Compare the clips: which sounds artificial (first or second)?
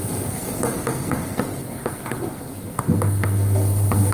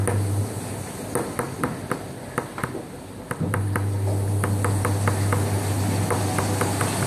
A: first